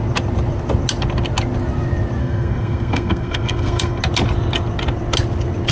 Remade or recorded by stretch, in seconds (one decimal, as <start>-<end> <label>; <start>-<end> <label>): 0.0-2.2 recorded; 2.2-4.0 remade; 4.0-5.7 recorded